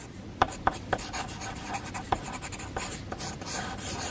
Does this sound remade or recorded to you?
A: recorded